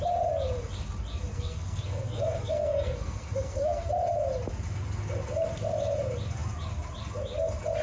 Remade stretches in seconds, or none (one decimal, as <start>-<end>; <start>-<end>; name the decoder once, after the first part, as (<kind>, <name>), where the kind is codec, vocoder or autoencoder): 1.3-3.9 (codec, SNAC)